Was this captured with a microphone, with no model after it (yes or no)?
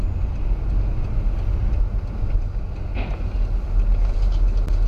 yes